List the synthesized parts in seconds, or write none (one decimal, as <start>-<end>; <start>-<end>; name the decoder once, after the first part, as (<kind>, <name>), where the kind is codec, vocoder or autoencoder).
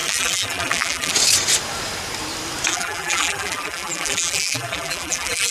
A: 0.0-1.1 (vocoder, BigVGAN v2); 2.7-5.5